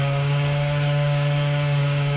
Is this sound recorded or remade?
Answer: remade